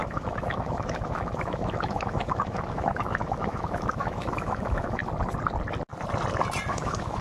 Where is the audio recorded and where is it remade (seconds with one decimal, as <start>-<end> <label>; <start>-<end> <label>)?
0.0-5.0 remade; 5.0-6.7 recorded; 6.7-7.2 remade